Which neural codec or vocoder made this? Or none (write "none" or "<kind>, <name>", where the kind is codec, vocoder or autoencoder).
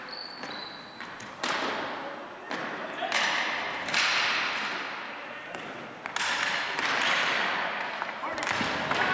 none